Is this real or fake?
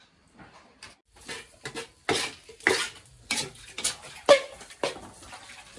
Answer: real